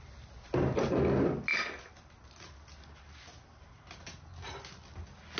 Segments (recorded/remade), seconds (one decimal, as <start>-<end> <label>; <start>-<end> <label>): 0.0-5.4 recorded